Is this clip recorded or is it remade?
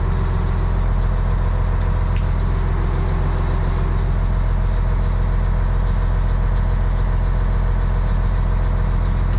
recorded